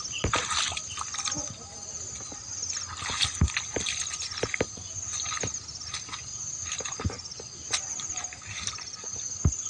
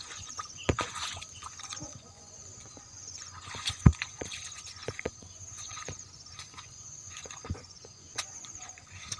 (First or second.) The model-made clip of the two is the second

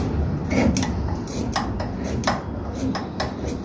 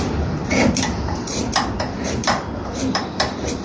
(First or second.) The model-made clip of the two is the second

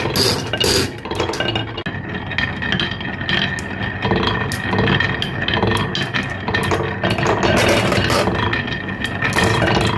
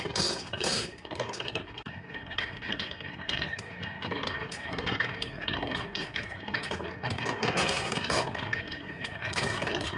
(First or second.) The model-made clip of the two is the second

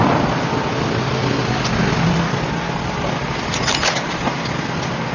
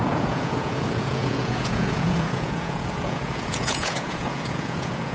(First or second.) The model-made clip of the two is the second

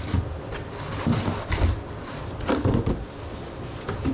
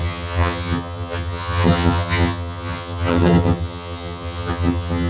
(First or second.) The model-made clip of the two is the second